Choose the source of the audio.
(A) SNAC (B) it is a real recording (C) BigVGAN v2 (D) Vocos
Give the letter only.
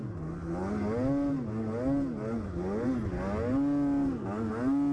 B